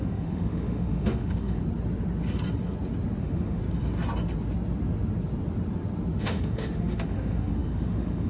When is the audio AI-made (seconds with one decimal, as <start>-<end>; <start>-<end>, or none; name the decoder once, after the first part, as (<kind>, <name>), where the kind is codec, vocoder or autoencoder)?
0.0-1.6 (autoencoder, DAC-VAE); 3.2-3.6; 6.2-8.3